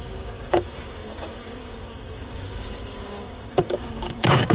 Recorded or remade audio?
remade